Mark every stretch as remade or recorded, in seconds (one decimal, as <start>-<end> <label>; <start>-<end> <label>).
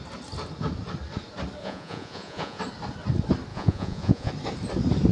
0.0-1.6 recorded; 1.6-2.6 remade; 2.6-3.5 recorded; 3.5-4.3 remade; 4.3-5.1 recorded